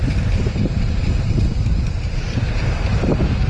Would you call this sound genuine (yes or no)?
no